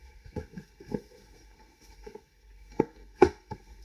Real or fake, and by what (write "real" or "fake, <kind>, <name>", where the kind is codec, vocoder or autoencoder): fake, codec, SNAC